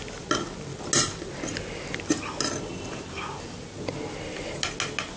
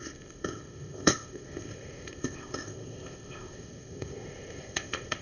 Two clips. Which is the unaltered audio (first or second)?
first